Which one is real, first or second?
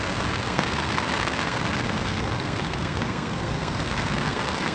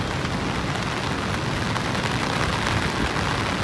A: second